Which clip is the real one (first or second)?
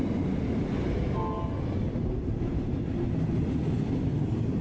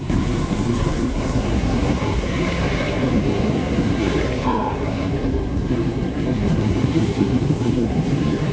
first